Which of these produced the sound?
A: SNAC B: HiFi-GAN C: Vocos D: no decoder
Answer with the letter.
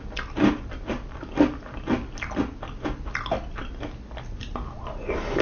D